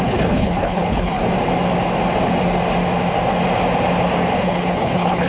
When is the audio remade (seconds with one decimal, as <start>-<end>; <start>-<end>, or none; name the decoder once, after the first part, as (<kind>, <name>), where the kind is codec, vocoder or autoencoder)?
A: 0.0-1.2 (codec, HILCodec); 4.4-5.3